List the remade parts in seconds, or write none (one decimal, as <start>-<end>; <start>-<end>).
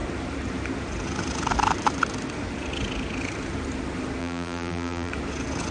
4.2-5.1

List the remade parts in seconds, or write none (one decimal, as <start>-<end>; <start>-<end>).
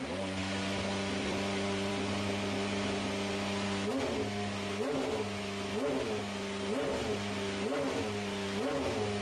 0.4-1.9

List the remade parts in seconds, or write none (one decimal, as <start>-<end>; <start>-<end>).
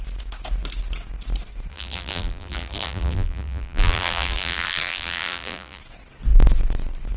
1.7-5.8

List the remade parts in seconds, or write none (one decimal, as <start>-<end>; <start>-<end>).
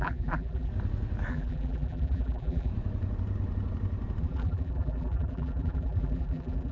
0.0-0.7; 1.3-2.7; 4.2-6.7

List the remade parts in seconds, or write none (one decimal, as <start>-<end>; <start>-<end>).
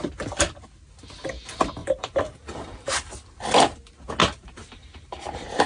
1.8-3.1; 4.2-5.7